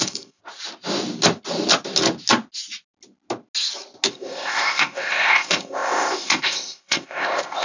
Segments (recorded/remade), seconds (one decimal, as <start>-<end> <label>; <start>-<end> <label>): 0.0-0.4 remade; 0.4-4.1 recorded; 4.1-7.6 remade